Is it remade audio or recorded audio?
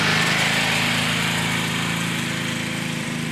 remade